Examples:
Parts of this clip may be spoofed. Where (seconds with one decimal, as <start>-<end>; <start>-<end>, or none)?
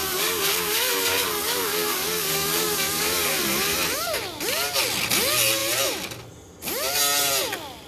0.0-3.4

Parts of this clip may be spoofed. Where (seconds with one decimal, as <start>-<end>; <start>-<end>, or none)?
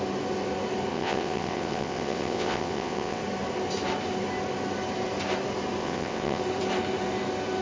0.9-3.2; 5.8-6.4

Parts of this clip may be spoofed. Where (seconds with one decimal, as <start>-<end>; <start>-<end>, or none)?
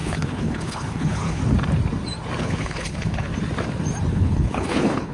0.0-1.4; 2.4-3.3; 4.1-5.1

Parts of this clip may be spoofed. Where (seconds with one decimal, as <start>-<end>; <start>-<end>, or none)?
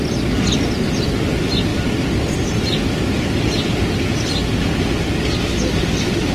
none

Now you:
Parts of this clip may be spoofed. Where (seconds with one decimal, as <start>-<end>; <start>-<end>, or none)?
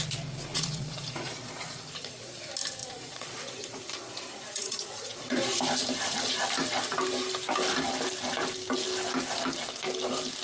0.5-2.4; 2.8-5.6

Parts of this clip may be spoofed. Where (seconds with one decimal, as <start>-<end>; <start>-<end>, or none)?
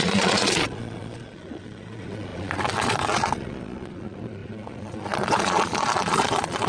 0.0-6.7